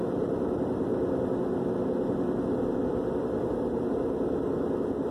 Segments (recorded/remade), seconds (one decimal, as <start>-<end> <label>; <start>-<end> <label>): 0.0-5.1 recorded